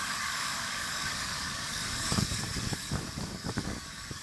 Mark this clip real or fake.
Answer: fake